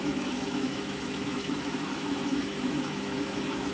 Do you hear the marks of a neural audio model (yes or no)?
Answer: yes